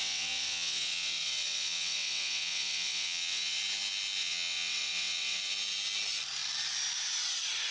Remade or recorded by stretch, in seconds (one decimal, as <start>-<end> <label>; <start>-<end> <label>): 0.0-3.6 remade; 3.6-4.2 recorded; 4.2-5.4 remade; 5.4-7.7 recorded

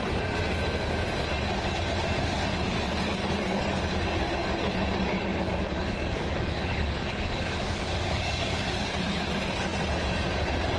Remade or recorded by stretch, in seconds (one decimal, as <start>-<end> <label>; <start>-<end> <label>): 0.0-3.2 recorded; 3.2-3.8 remade; 3.8-4.4 recorded; 4.4-9.0 remade; 9.0-10.8 recorded

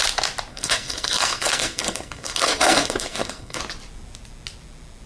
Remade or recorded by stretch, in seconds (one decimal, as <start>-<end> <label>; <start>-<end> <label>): 0.0-0.5 recorded; 0.5-3.6 remade; 3.6-5.1 recorded

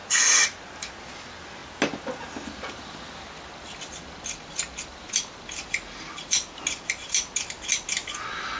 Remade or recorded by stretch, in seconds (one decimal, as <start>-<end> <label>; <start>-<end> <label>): 0.0-8.6 recorded

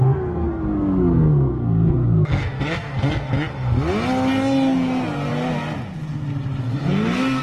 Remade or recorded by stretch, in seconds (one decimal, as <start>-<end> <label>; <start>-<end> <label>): 0.0-3.3 remade; 3.3-6.6 recorded; 6.6-7.4 remade